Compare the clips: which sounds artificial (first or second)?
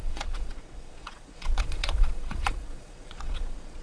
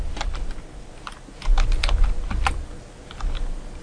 first